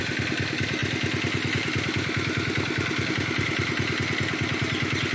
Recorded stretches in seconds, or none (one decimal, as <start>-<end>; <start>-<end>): 0.0-5.1